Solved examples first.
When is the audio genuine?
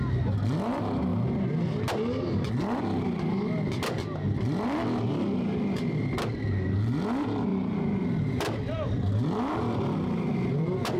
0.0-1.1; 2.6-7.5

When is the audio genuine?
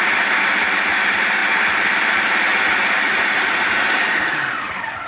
2.5-3.1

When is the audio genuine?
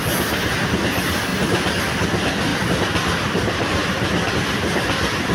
0.0-2.5; 4.3-5.3